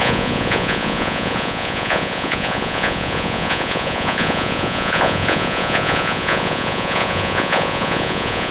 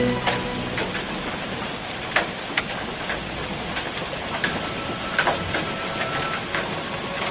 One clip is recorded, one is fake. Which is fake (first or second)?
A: first